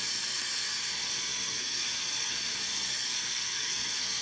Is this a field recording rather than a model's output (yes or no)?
no